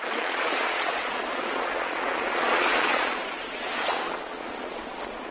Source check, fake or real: fake